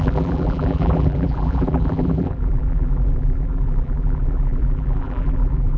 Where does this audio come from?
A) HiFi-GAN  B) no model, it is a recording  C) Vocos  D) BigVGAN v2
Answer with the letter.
D